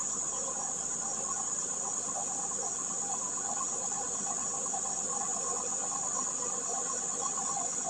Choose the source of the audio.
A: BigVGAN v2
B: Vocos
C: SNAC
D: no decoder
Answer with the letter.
D